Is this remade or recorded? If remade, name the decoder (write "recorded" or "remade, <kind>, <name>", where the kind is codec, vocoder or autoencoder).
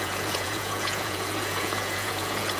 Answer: remade, vocoder, Vocos